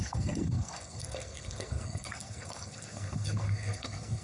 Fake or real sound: fake